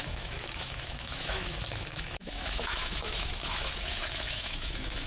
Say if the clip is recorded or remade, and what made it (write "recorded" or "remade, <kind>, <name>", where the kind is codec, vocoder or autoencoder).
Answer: remade, autoencoder, DAC-VAE